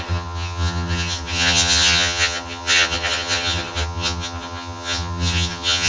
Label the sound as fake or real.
fake